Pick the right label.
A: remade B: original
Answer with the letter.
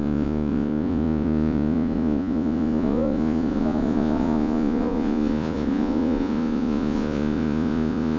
A